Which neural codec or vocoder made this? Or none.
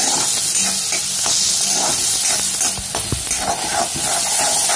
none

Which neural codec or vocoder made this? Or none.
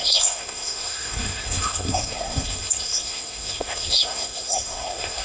codec, SNAC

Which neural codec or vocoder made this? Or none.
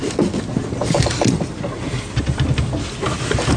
none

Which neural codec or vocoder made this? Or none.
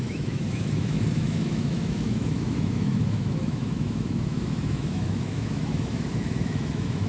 autoencoder, DAC-VAE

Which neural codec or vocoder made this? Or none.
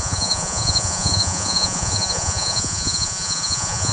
vocoder, Vocos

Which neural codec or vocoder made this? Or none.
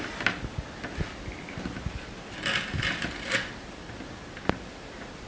none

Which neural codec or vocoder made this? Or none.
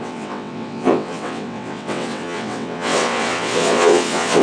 vocoder, WaveNeXt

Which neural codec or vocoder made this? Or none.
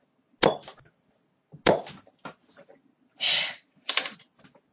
none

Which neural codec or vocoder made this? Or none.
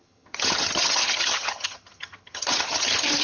vocoder, HiFi-GAN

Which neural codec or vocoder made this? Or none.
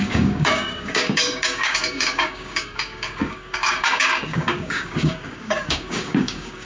codec, DAC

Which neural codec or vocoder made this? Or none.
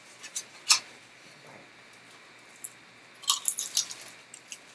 none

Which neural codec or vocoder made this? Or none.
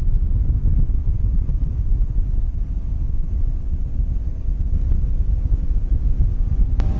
none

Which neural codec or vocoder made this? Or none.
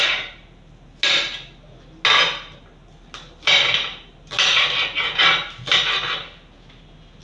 none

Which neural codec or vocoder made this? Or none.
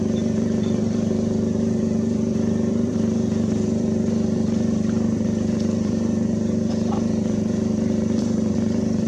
vocoder, BigVGAN v2